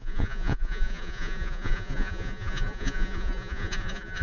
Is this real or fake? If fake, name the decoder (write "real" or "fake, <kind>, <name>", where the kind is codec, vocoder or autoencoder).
fake, vocoder, Vocos